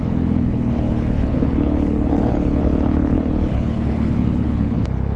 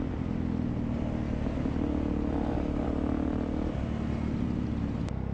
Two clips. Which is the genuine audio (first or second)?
second